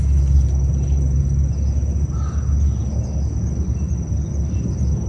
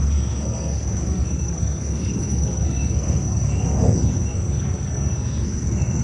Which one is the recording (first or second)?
first